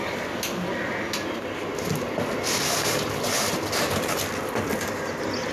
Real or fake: real